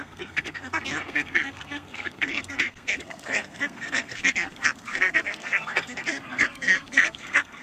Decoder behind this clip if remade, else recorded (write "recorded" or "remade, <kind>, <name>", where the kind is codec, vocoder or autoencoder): remade, codec, SNAC